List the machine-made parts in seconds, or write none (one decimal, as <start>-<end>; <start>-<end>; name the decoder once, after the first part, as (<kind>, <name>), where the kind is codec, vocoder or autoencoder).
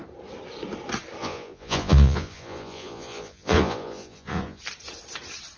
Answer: 1.2-4.6 (vocoder, Vocos)